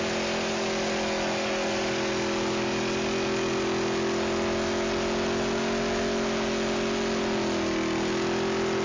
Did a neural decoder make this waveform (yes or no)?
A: no